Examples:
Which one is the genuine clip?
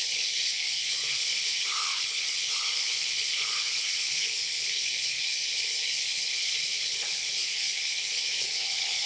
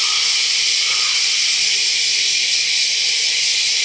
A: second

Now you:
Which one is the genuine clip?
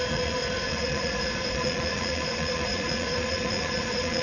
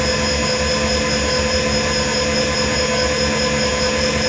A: second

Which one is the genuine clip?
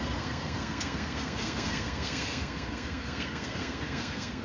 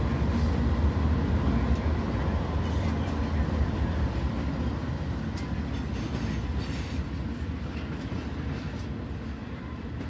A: second